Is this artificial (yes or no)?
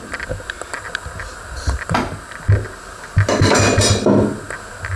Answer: no